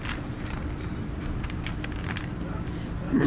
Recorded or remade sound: recorded